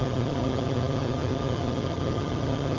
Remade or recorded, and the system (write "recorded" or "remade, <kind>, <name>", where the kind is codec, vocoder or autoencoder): remade, vocoder, HiFi-GAN